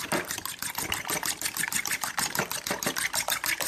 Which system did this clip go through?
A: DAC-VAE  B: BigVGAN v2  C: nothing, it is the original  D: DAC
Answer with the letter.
C